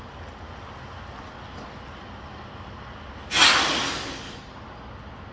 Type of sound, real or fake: real